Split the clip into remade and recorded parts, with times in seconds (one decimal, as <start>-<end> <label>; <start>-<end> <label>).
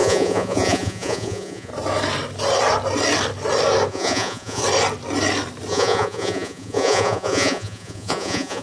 0.0-1.7 remade; 1.7-3.9 recorded; 3.9-4.6 remade; 4.6-5.7 recorded; 5.7-8.6 remade